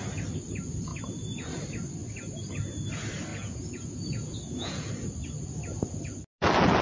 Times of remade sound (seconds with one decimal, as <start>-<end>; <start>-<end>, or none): 3.3-4.9